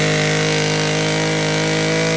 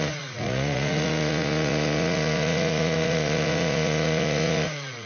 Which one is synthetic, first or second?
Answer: second